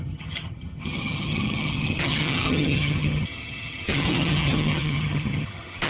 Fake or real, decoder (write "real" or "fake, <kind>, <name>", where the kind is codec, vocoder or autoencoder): fake, vocoder, HiFi-GAN